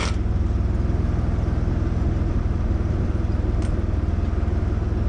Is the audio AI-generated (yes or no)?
no